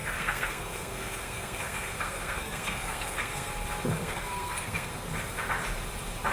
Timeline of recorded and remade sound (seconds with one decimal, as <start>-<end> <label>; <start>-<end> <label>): 0.0-3.5 remade; 3.5-4.0 recorded; 4.0-4.9 remade; 4.9-6.3 recorded

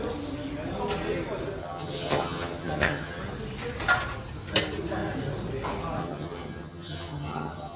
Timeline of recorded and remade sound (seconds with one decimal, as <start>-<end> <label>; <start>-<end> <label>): 0.0-1.6 recorded; 1.6-3.2 remade; 3.2-6.0 recorded; 6.0-7.8 remade

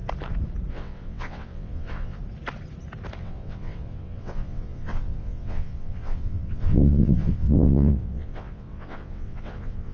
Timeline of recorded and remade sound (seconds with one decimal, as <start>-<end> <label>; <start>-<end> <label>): 0.0-0.7 recorded; 0.7-2.2 remade; 2.2-3.2 recorded; 3.2-9.9 remade

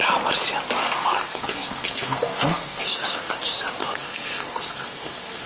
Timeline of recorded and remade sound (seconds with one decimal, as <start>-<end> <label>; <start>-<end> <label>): 0.0-0.8 recorded; 0.8-3.3 remade; 3.3-3.8 recorded; 3.8-5.5 remade

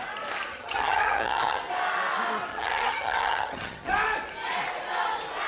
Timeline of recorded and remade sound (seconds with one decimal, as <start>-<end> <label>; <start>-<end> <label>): 0.0-0.5 recorded; 0.5-1.6 remade; 1.6-2.5 recorded; 2.5-3.9 remade; 3.9-5.5 recorded

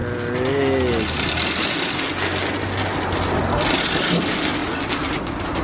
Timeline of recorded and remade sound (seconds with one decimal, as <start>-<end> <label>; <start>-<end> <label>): 0.0-5.6 recorded